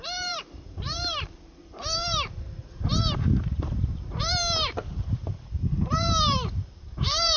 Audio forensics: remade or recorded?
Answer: remade